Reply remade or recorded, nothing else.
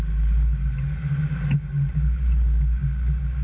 recorded